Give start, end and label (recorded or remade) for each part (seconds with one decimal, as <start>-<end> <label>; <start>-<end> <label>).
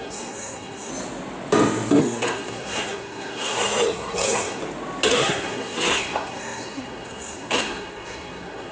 0.0-0.9 remade; 0.9-2.0 recorded; 2.0-4.6 remade; 4.6-5.1 recorded; 5.1-8.7 remade